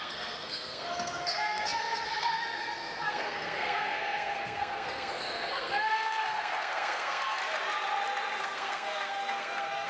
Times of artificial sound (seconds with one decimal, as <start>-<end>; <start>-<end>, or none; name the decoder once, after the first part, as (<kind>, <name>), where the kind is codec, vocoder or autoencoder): 0.0-7.4 (codec, SNAC); 8.4-9.9